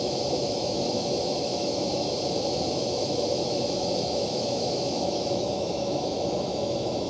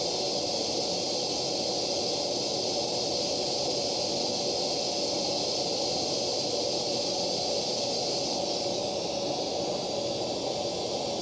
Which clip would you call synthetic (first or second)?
first